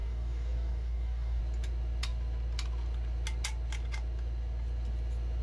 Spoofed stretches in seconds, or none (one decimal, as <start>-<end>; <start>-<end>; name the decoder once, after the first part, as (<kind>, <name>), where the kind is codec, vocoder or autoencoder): 0.0-1.4 (codec, DAC)